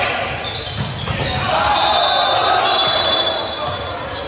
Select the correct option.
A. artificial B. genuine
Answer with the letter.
B